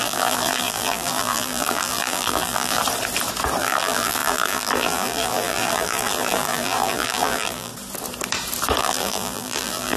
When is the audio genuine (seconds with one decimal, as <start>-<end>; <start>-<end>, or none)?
2.8-3.6; 7.7-8.8